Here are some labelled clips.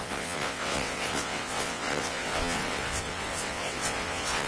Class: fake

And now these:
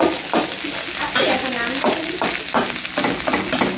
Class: real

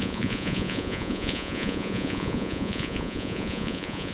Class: fake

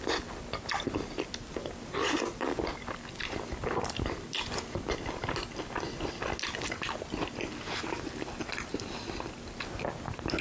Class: real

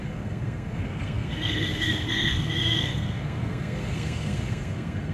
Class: fake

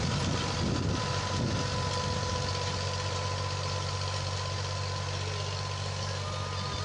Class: real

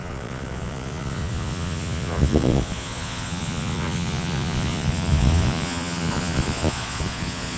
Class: fake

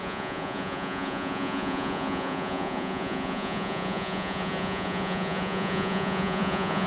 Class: fake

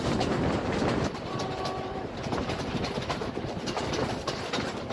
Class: fake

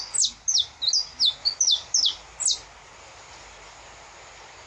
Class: real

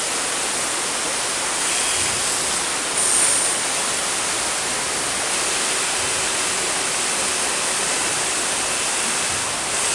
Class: real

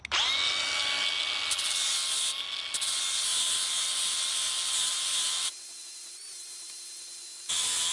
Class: real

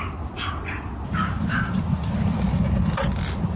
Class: real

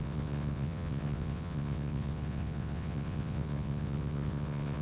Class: fake